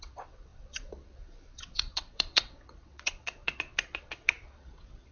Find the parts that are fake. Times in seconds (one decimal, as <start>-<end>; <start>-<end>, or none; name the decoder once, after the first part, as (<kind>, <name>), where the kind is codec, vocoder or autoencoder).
0.0-5.1 (vocoder, WaveNeXt)